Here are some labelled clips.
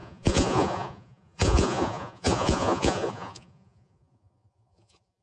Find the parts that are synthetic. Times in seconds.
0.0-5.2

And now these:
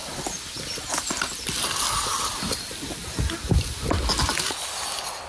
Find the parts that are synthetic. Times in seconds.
none

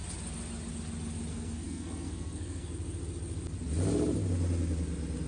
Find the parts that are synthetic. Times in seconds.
1.3-2.7

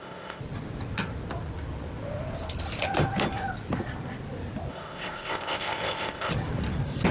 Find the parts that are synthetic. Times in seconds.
0.0-0.4; 4.7-6.3

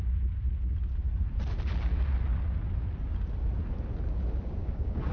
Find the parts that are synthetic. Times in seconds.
4.6-5.1

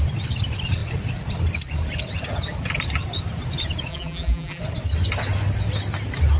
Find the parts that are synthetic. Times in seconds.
3.9-4.6

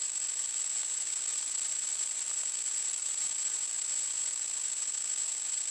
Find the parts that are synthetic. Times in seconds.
1.3-2.3; 3.0-3.6